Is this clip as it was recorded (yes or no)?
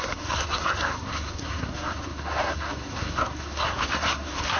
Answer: no